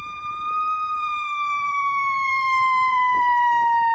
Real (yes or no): no